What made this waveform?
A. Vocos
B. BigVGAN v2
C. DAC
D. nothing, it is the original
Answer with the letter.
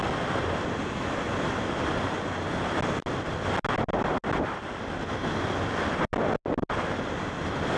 D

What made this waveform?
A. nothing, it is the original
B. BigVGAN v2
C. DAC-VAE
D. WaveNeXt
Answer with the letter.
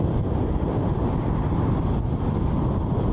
B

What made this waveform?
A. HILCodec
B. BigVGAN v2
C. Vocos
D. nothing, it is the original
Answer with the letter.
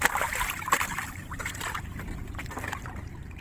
D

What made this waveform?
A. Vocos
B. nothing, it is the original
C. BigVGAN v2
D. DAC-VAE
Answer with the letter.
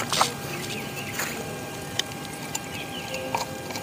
B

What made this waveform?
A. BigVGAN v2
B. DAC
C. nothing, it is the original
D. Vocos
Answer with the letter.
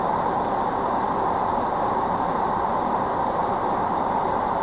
A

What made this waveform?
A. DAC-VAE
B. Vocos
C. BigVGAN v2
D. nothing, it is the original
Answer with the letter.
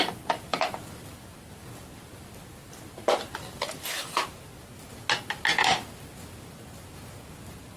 D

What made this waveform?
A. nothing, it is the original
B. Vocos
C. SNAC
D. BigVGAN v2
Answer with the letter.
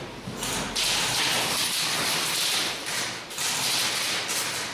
A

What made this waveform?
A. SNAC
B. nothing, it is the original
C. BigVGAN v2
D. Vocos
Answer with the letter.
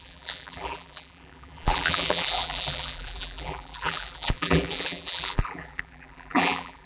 C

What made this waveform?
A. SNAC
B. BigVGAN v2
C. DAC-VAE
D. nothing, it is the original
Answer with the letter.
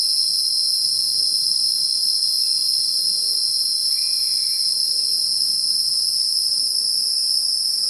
D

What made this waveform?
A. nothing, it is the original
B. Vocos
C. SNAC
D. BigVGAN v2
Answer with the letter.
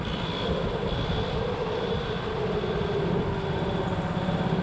A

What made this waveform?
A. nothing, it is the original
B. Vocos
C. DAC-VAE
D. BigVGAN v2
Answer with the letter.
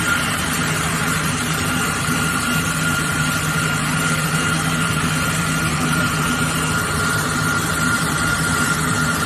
D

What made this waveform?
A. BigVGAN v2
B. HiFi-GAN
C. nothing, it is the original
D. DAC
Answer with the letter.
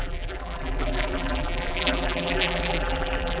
A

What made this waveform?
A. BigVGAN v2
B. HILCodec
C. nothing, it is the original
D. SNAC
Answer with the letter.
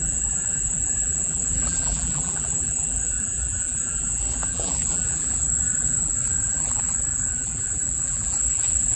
A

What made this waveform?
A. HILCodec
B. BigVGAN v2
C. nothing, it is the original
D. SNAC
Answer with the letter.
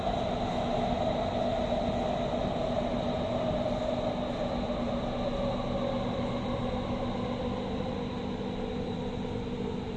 C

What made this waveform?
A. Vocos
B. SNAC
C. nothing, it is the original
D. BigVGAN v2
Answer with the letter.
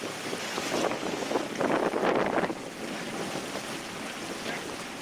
C